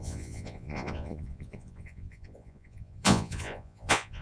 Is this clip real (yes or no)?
no